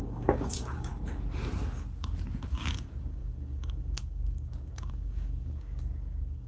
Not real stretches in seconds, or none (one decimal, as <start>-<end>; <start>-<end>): 0.0-0.9; 2.5-6.5